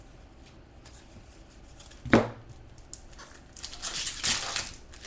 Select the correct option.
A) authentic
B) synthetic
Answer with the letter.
A